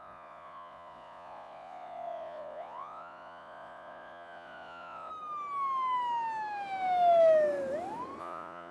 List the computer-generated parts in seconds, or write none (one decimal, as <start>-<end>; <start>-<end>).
0.0-5.1; 8.2-8.7